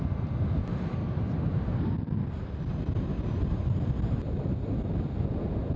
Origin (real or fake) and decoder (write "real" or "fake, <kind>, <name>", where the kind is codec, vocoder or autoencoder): real